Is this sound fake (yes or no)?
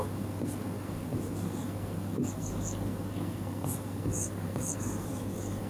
yes